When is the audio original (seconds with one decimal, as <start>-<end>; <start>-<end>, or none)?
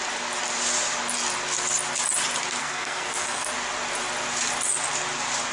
0.0-2.6; 3.5-5.5